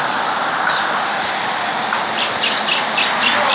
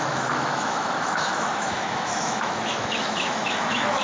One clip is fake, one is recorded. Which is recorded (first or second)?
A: first